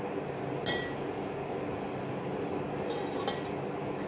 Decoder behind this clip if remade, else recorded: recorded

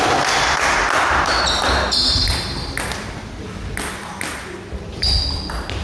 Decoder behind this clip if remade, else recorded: recorded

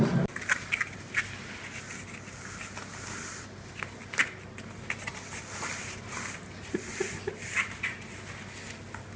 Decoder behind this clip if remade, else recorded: recorded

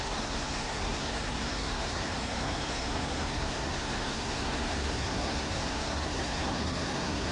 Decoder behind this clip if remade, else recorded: remade, codec, SNAC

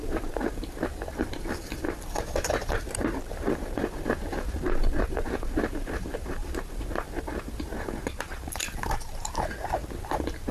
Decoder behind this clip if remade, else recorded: remade, vocoder, BigVGAN v2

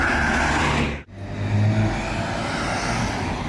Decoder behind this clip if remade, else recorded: recorded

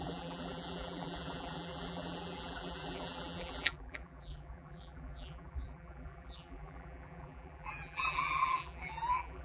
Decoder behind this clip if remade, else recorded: remade, vocoder, BigVGAN v2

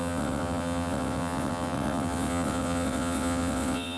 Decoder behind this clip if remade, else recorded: remade, vocoder, WaveNeXt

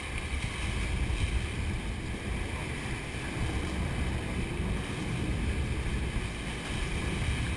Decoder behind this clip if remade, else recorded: recorded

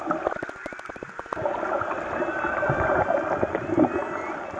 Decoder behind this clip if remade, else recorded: recorded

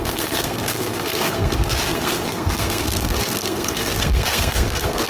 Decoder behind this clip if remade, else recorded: remade, codec, SNAC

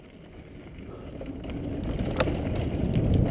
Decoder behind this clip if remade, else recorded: recorded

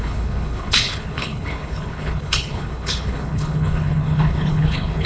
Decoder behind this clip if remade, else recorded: remade, codec, HILCodec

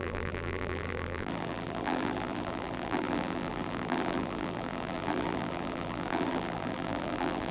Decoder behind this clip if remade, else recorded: remade, vocoder, BigVGAN v2